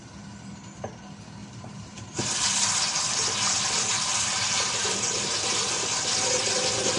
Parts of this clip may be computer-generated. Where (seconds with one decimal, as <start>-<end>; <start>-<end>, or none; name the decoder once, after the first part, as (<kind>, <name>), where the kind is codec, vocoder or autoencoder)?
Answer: 1.4-2.7 (vocoder, BigVGAN v2); 4.1-5.6